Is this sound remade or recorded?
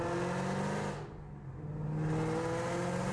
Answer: recorded